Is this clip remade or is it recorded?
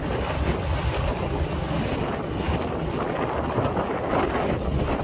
recorded